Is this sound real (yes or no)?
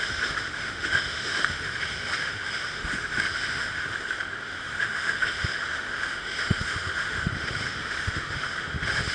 no